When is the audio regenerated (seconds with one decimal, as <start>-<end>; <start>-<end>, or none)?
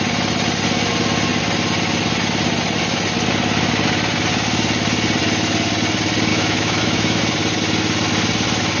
6.3-7.2